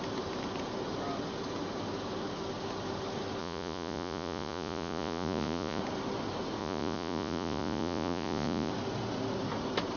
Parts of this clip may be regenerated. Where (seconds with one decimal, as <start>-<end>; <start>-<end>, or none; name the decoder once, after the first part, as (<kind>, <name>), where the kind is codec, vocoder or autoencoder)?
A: 3.4-5.8 (vocoder, Vocos); 6.6-8.7